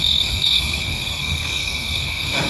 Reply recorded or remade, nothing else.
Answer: remade